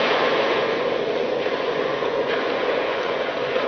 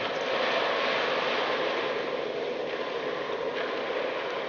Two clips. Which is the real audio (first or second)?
second